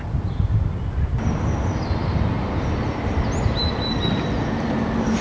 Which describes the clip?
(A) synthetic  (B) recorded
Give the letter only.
B